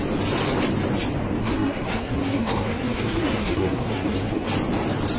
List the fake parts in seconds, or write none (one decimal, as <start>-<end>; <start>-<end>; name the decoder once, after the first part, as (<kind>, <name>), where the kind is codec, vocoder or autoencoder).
1.4-4.5 (codec, SNAC)

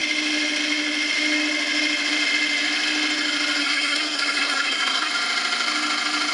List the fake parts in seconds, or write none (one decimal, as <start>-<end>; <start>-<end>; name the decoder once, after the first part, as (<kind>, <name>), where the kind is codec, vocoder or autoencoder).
3.6-5.1 (codec, SNAC)

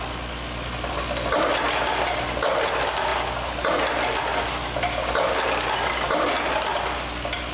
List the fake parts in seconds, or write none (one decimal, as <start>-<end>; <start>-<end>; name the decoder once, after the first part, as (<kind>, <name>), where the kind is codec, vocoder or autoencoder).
none

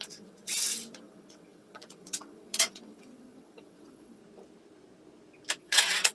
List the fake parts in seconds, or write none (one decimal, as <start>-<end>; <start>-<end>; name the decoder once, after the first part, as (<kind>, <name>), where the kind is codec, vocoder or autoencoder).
0.0-4.2 (vocoder, WaveNeXt); 5.6-6.1

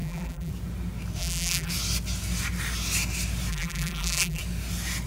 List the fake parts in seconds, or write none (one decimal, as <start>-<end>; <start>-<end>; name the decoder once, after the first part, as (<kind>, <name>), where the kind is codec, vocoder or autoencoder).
0.0-0.5 (vocoder, BigVGAN v2); 1.2-1.7; 3.5-4.4

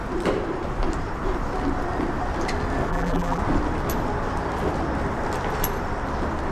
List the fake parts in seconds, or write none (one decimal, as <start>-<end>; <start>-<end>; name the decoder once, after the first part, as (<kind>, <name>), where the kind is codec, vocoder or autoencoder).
2.9-3.4 (vocoder, BigVGAN v2)

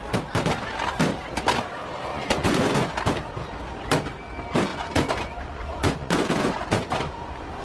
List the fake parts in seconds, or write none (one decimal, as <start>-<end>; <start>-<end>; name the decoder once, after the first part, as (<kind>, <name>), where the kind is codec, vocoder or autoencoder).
2.1-2.9 (vocoder, Vocos); 4.7-7.6

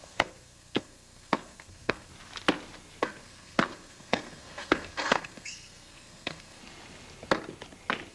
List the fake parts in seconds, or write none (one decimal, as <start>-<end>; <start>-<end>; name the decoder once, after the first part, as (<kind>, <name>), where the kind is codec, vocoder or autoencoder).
0.0-2.1 (codec, SNAC); 3.0-6.6